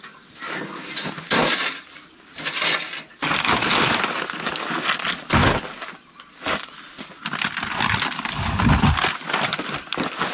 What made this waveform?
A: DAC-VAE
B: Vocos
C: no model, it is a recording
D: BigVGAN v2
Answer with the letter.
D